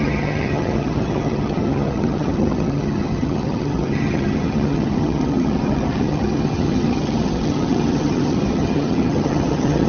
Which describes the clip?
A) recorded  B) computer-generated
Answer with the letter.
B